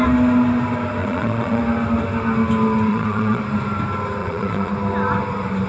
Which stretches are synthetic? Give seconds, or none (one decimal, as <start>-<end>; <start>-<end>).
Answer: 1.0-1.6; 2.9-3.4; 4.2-4.7